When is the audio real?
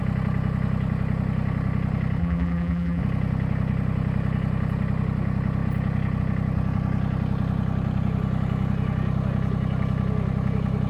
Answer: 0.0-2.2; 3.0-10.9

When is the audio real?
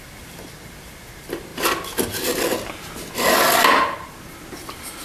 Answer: 0.0-5.0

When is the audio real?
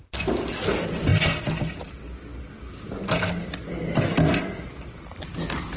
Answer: 0.0-5.8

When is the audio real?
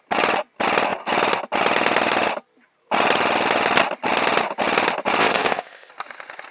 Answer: 0.0-5.2; 5.9-6.5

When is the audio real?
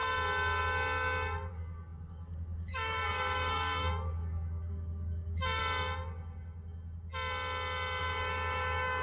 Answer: 0.0-1.5; 5.6-8.0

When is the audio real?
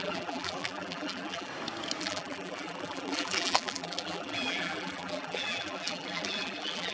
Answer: 1.5-2.0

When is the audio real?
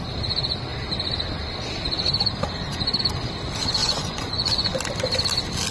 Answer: 0.0-3.8; 4.8-5.7